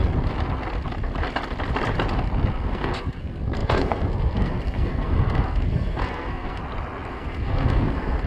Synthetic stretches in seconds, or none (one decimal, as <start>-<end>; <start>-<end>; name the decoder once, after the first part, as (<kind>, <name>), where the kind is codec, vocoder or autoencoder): 2.5-6.6 (codec, SNAC); 7.1-8.3